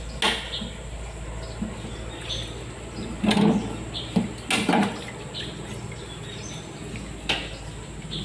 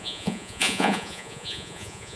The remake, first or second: second